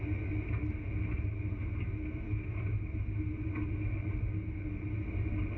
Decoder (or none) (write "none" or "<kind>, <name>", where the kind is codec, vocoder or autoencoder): none